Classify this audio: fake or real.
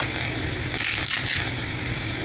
real